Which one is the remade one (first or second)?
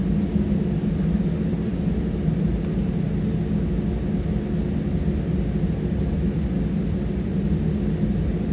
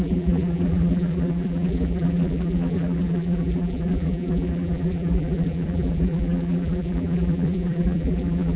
second